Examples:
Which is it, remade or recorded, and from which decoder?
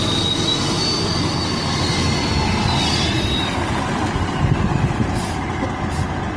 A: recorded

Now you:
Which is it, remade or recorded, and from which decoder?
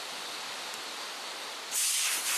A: recorded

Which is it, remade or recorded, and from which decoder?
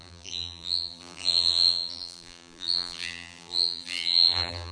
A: remade, vocoder, BigVGAN v2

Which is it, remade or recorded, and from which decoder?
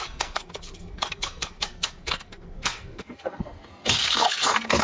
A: remade, codec, SNAC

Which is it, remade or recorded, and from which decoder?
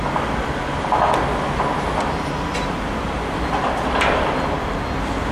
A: recorded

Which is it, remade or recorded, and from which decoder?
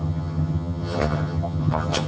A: remade, vocoder, HiFi-GAN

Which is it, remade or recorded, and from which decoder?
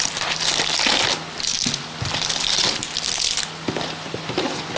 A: recorded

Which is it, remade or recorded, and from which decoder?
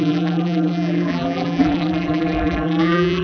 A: remade, vocoder, BigVGAN v2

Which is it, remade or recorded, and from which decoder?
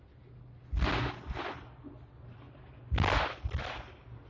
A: recorded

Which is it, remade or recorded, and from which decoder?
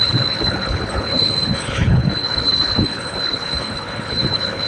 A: remade, codec, HILCodec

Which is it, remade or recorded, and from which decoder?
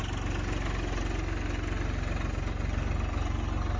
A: recorded